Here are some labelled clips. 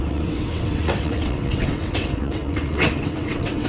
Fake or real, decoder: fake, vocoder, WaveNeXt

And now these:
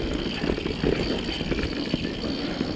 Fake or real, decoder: real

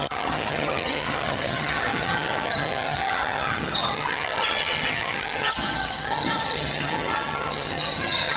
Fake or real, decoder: fake, vocoder, HiFi-GAN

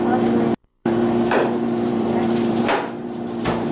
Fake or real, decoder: fake, vocoder, BigVGAN v2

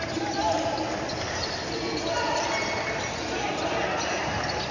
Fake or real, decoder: real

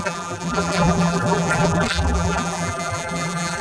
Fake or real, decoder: fake, vocoder, BigVGAN v2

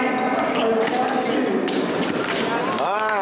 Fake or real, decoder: real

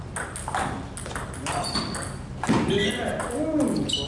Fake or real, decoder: real